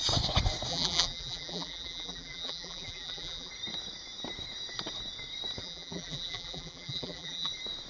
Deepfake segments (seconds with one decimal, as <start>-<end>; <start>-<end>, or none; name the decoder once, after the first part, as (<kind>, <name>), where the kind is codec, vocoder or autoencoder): 0.7-3.5 (vocoder, BigVGAN v2); 5.6-7.5